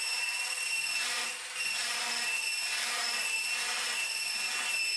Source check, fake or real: fake